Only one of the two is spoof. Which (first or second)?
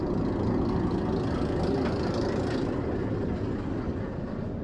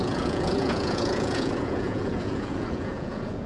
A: second